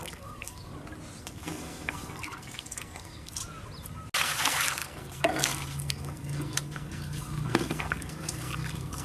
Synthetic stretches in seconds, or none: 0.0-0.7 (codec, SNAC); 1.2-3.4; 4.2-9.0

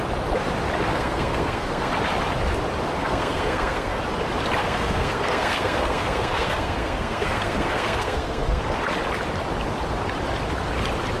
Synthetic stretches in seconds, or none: 0.9-1.9 (codec, SNAC); 3.0-4.0; 4.6-8.6

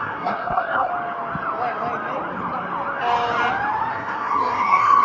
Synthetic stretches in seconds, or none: 0.0-0.9 (codec, SNAC); 3.9-5.0

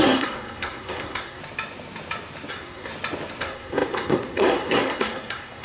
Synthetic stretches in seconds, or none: 0.0-1.4 (codec, SNAC); 2.5-2.9; 3.4-5.6

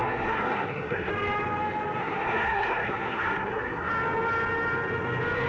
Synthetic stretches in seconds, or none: 0.0-1.1 (codec, SNAC); 2.0-3.9

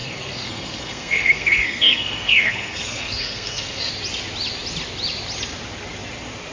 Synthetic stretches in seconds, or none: 0.0-3.9 (codec, SNAC)

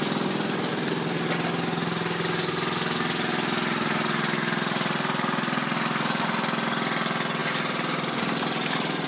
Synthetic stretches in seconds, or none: none

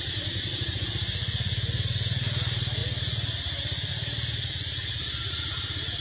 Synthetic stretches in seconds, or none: none